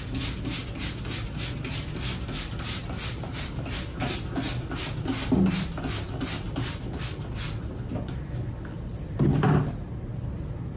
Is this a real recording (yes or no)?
yes